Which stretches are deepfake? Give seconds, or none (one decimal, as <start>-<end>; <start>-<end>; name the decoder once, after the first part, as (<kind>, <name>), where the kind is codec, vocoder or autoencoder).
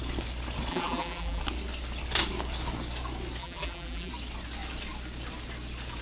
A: 0.7-1.4 (vocoder, BigVGAN v2); 3.4-4.1